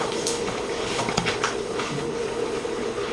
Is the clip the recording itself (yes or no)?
no